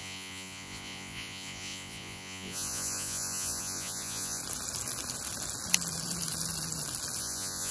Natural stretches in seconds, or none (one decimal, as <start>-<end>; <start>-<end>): 4.4-7.2